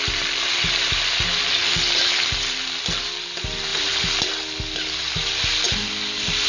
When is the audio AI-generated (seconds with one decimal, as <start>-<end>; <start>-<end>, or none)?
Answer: none